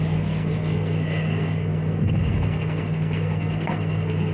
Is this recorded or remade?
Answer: remade